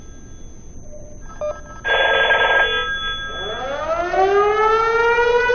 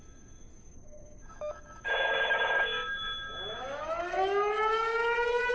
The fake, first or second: second